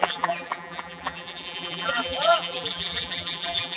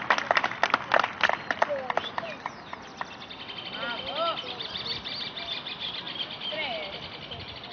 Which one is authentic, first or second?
second